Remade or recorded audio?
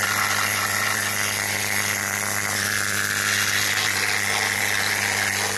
recorded